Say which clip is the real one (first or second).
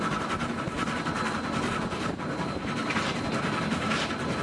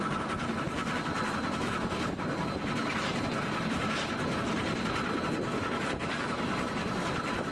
first